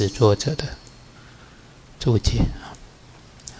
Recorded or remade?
recorded